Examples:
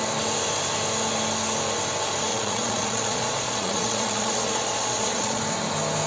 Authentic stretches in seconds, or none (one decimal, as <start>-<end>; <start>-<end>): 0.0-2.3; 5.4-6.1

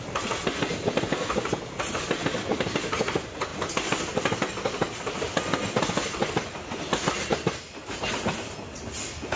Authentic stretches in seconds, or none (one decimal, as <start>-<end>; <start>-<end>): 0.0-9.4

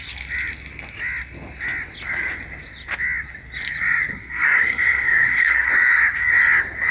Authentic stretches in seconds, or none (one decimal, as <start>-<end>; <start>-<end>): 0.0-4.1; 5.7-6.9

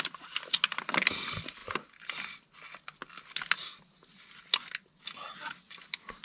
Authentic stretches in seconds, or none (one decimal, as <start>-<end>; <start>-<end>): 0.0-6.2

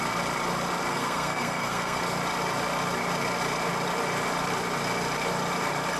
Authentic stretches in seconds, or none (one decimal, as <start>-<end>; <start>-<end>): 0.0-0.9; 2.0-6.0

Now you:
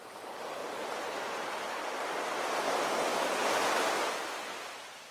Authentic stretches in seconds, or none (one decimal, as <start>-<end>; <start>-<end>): 0.0-5.1

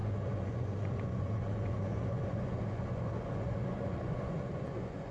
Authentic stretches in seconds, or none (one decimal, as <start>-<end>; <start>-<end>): none

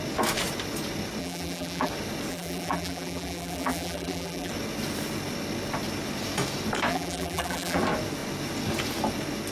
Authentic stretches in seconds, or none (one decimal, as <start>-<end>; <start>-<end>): 0.0-1.2; 1.9-2.3; 4.5-6.9; 7.8-9.5